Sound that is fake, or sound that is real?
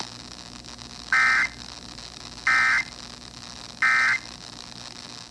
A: real